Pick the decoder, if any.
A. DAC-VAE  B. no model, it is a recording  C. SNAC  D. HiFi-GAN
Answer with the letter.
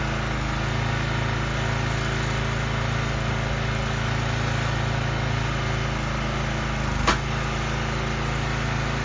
B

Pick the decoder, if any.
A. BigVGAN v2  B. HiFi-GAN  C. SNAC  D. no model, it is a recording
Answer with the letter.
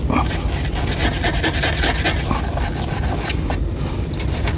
D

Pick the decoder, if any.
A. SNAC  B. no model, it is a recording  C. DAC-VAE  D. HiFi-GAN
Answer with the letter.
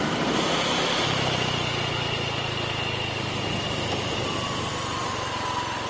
B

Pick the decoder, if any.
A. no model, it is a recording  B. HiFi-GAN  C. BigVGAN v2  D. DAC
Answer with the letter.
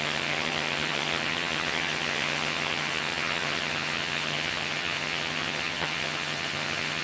B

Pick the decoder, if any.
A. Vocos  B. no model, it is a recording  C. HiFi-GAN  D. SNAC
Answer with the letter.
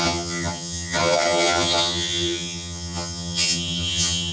C